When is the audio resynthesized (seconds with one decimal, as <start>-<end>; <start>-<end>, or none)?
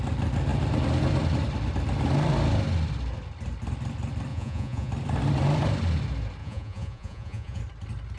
4.3-4.9; 6.4-7.6